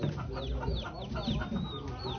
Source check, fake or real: real